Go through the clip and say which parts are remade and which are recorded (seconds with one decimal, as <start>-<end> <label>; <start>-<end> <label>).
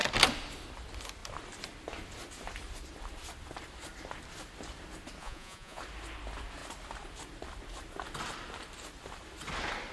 0.0-5.2 recorded; 5.2-5.8 remade; 5.8-9.9 recorded